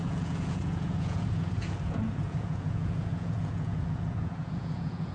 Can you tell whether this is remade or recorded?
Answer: remade